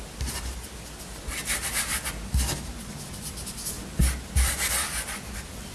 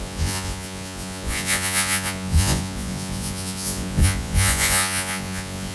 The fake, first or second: second